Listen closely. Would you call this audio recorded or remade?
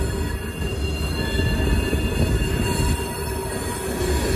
recorded